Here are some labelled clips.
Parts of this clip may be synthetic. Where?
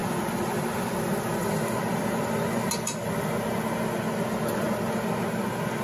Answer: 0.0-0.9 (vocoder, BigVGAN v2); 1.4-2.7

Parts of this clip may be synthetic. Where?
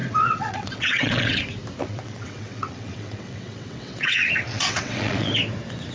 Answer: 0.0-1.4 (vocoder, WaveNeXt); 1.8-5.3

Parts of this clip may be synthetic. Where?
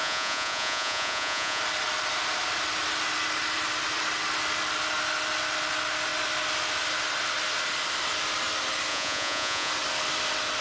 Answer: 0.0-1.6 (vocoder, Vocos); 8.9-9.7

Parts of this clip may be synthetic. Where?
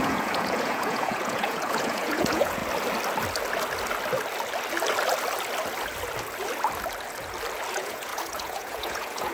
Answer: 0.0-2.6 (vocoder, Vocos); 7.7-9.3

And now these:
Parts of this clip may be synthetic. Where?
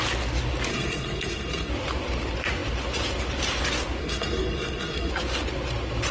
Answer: 0.7-1.7 (codec, SNAC); 4.0-5.1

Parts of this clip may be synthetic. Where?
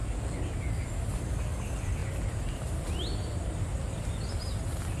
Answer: none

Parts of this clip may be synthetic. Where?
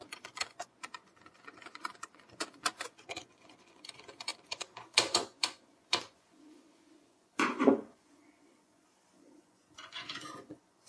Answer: 0.0-10.9 (vocoder, Vocos)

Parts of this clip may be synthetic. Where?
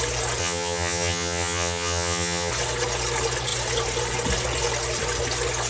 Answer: 0.4-2.5 (vocoder, HiFi-GAN)